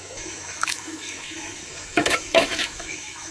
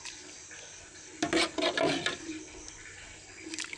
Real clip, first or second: second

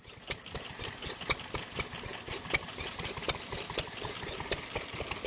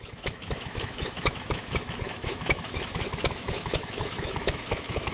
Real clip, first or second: first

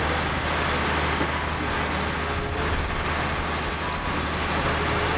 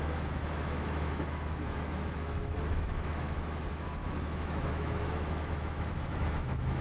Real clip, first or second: first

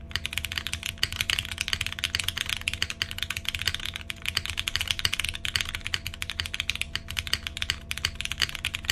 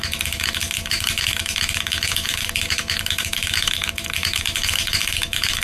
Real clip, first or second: first